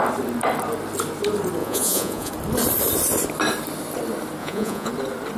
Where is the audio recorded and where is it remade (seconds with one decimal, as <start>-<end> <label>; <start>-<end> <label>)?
0.0-1.6 recorded; 1.6-2.3 remade; 2.3-4.4 recorded; 4.4-4.9 remade; 4.9-5.4 recorded